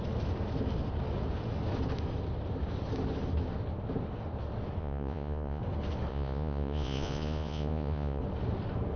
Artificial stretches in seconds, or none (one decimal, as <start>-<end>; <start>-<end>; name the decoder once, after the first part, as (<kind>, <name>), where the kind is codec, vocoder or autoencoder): 4.8-5.6 (vocoder, Vocos); 6.1-8.2